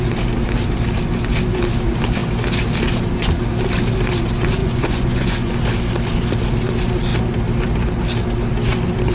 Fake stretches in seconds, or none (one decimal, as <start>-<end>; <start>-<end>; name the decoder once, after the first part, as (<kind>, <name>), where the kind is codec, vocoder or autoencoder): 4.6-5.5 (vocoder, Vocos)